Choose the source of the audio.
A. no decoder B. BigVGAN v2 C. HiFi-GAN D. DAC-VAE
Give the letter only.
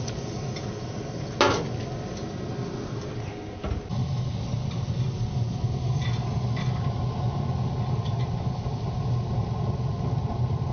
A